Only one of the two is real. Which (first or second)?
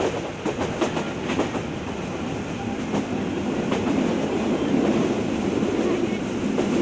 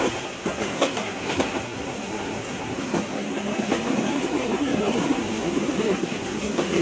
first